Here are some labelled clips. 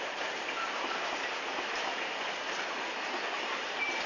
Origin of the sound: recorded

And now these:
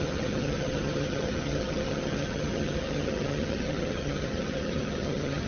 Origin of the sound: remade